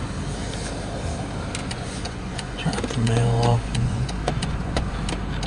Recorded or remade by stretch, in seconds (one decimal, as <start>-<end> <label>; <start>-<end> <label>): 0.0-1.6 recorded; 1.6-4.9 remade; 4.9-5.5 recorded